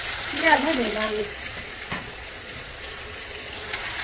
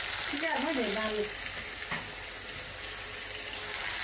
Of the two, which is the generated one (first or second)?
first